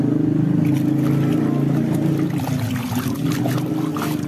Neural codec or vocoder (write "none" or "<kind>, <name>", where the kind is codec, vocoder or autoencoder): none